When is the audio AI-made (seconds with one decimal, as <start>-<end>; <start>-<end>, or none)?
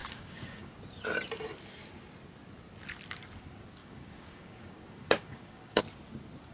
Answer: 0.0-0.7; 3.8-5.8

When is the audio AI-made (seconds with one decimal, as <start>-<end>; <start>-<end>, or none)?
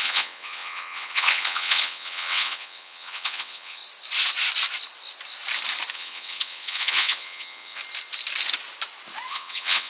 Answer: 0.0-3.8; 5.9-7.8; 9.3-9.9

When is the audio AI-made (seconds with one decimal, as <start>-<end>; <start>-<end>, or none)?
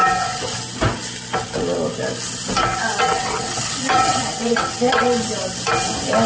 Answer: 3.0-5.0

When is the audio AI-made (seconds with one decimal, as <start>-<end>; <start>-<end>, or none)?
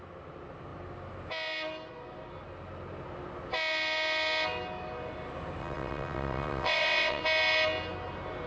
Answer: 5.6-7.2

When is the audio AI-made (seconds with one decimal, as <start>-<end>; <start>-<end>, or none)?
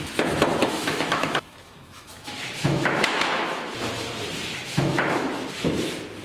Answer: 0.6-3.7; 4.7-5.3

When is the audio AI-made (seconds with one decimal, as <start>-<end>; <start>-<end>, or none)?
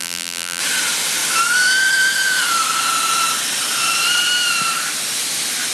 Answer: 0.0-0.6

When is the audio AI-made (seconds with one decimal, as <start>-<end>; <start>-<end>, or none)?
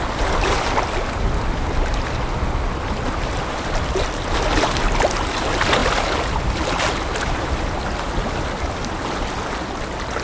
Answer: none